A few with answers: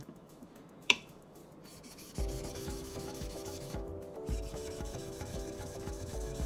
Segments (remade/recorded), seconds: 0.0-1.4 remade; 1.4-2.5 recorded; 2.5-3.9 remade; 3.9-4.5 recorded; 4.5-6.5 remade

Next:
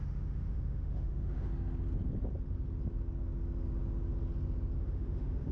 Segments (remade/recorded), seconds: 0.0-1.5 remade; 1.5-4.8 recorded; 4.8-5.5 remade

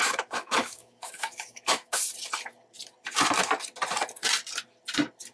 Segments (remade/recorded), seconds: 0.0-2.0 remade; 2.0-5.3 recorded

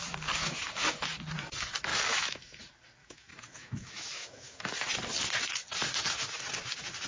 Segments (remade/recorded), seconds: 0.0-1.9 recorded; 1.9-2.6 remade; 2.6-3.0 recorded; 3.0-4.7 remade; 4.7-7.1 recorded

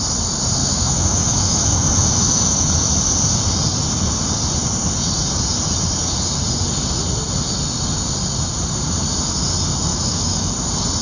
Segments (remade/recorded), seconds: 0.0-0.6 recorded; 0.6-2.9 remade; 2.9-9.9 recorded; 9.9-10.5 remade; 10.5-11.0 recorded

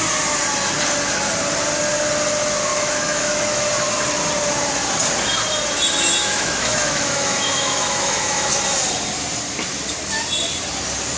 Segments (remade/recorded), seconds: 0.0-2.7 recorded; 2.7-3.6 remade; 3.6-6.2 recorded; 6.2-8.5 remade; 8.5-11.2 recorded

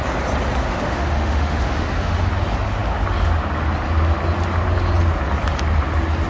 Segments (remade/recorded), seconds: 0.0-0.6 recorded; 0.6-2.3 remade; 2.3-6.3 recorded

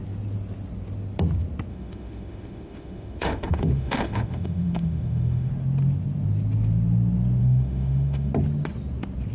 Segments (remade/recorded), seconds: 0.0-1.7 recorded; 1.7-5.5 remade; 5.5-7.4 recorded; 7.4-8.3 remade; 8.3-9.3 recorded